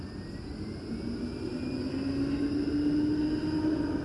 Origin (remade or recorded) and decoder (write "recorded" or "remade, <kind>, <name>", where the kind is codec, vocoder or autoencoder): recorded